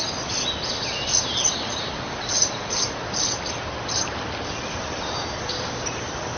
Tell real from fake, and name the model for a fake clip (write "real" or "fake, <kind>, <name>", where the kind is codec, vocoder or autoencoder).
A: real